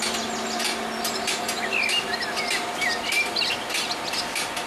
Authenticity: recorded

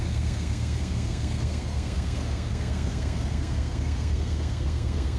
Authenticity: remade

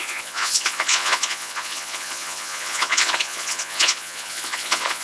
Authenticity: remade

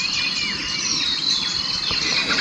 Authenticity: recorded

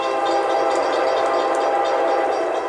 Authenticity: recorded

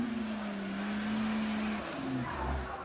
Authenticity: recorded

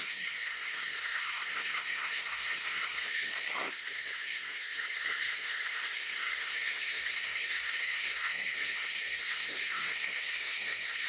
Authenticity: remade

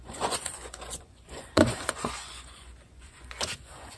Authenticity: remade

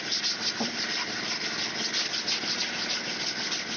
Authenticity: recorded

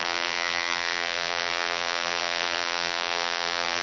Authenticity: remade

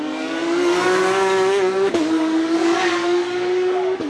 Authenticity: remade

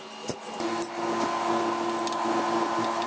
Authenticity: recorded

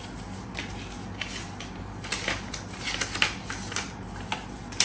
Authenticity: recorded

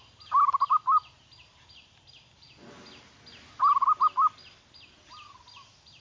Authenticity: recorded